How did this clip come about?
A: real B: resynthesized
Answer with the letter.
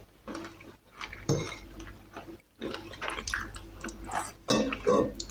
A